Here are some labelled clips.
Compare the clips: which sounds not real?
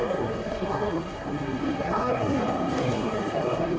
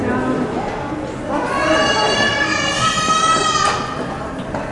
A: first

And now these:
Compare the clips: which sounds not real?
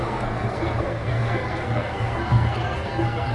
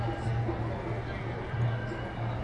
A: first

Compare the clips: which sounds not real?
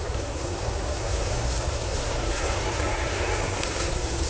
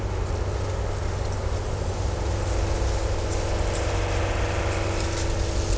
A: first